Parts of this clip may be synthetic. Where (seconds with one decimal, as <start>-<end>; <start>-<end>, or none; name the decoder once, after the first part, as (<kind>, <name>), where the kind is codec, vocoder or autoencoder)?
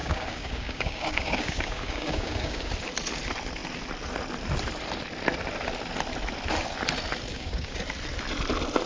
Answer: 0.0-2.7 (codec, DAC); 7.3-7.8